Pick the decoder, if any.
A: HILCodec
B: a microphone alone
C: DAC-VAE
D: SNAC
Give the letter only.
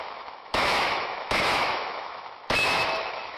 C